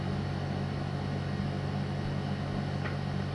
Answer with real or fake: real